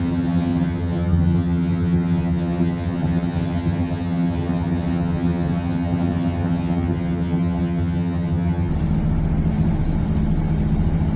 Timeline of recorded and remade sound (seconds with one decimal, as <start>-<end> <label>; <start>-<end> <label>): 0.0-8.7 remade; 8.7-11.2 recorded